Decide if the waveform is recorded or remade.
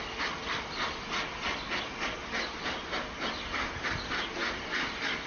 recorded